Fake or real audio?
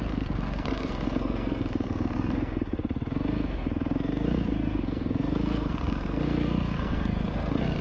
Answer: fake